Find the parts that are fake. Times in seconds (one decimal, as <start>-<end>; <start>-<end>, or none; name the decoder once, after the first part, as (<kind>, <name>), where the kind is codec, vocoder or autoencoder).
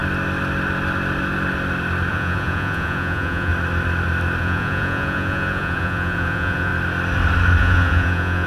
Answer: 2.1-3.5 (vocoder, Vocos); 4.4-6.7; 7.6-8.5